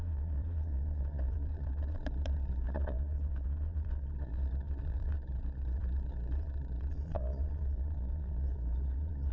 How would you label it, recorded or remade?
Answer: remade